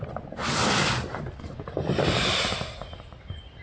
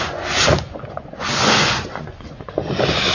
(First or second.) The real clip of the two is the first